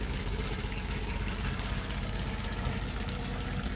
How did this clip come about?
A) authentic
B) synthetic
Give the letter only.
B